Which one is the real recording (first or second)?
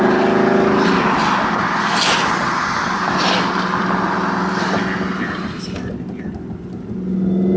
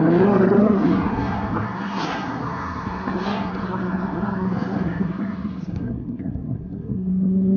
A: first